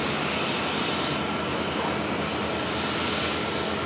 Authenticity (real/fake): real